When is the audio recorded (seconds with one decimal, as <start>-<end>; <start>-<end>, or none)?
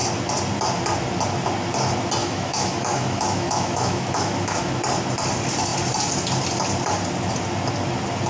0.0-2.2; 4.7-8.3